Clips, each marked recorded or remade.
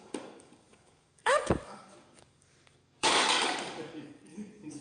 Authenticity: remade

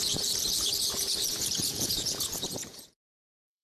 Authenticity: remade